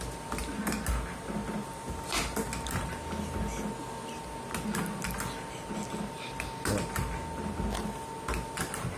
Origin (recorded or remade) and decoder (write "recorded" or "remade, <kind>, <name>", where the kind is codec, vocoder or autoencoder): recorded